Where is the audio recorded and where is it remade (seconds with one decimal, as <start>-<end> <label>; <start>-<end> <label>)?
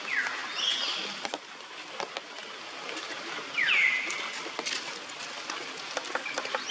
0.0-6.7 recorded